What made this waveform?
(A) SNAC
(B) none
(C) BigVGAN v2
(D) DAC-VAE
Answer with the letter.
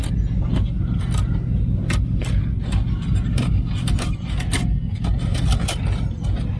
B